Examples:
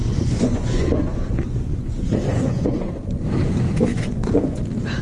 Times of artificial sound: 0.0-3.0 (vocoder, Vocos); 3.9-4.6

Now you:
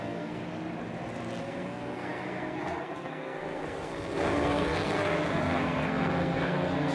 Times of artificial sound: 0.0-0.4 (codec, SNAC); 1.4-6.9

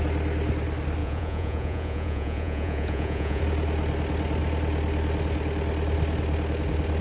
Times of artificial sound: 1.0-3.4 (vocoder, Vocos)

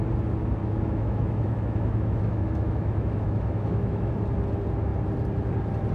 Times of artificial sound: 0.6-4.1 (autoencoder, DAC-VAE)

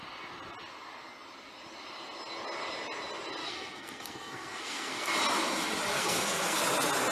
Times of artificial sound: 3.4-5.1 (codec, SNAC); 5.9-6.6